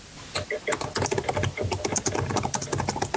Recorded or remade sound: recorded